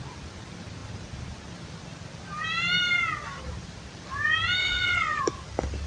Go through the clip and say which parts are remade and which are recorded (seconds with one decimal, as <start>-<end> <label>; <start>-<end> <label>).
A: 0.0-4.6 recorded; 4.6-5.2 remade; 5.2-5.9 recorded